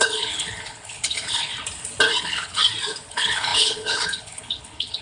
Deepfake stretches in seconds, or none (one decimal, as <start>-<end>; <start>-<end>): 0.0-1.5; 2.2-2.6; 3.1-5.0